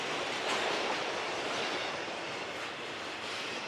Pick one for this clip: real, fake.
real